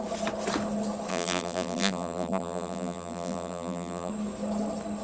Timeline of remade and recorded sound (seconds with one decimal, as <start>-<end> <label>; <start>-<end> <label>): 0.0-1.1 recorded; 1.1-4.1 remade; 4.1-5.0 recorded